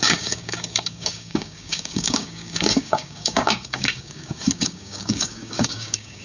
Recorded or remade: remade